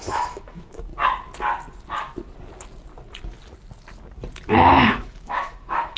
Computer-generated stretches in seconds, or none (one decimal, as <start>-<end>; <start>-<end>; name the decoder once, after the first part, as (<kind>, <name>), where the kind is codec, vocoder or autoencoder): 0.0-0.9 (autoencoder, DAC-VAE); 4.5-6.0